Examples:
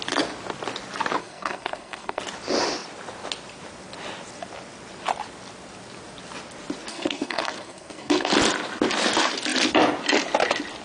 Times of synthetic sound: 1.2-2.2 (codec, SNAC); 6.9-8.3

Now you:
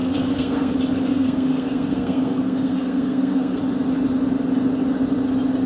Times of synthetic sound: 0.0-0.7 (codec, SNAC); 1.1-3.6

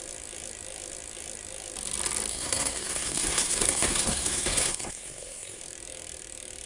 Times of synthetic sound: 2.3-5.6 (codec, SNAC)

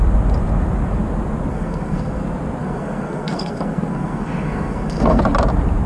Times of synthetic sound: 1.5-2.2 (codec, SNAC); 2.6-5.2

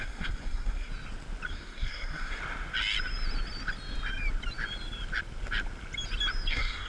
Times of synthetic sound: 0.0-0.9 (codec, SNAC); 1.5-2.4; 6.5-6.9

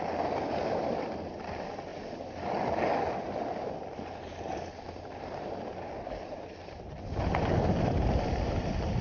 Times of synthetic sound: none

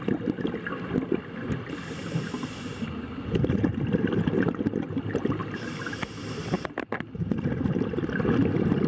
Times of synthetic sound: none